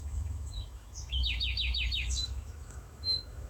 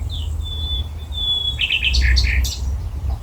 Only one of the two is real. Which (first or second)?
second